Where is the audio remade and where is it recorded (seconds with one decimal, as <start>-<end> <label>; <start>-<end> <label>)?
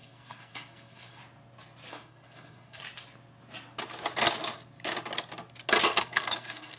0.0-1.2 remade; 1.2-1.9 recorded; 1.9-2.8 remade; 2.8-6.0 recorded; 6.0-6.8 remade